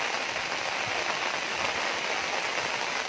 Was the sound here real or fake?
real